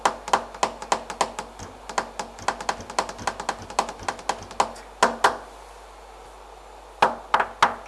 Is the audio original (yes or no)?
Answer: yes